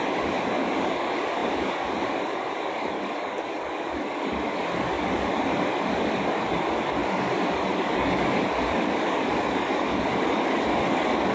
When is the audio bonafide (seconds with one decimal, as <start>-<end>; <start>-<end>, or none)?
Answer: none